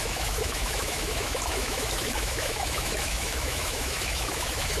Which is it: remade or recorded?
remade